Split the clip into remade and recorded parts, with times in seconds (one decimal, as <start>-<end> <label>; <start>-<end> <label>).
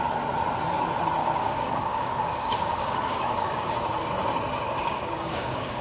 0.0-1.2 recorded; 1.2-3.7 remade; 3.7-4.8 recorded; 4.8-5.8 remade